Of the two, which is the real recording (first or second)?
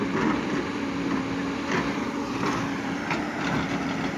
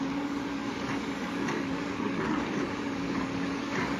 first